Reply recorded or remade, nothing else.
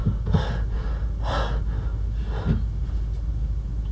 recorded